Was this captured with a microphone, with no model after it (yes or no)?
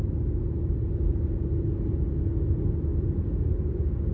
yes